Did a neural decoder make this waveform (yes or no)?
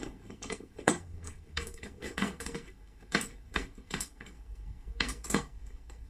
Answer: yes